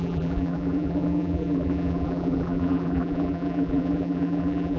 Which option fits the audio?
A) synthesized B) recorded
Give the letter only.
A